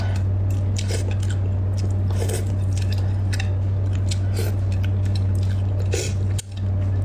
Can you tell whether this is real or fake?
real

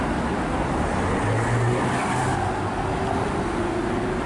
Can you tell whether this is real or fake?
real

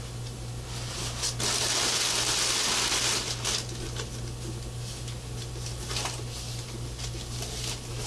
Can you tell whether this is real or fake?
real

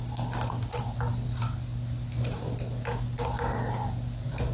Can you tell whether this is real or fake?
real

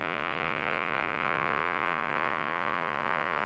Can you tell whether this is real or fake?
fake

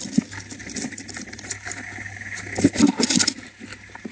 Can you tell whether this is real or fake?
real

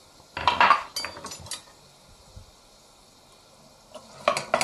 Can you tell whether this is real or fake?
real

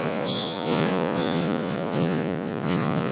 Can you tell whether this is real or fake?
fake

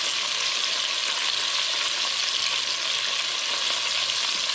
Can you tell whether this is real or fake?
real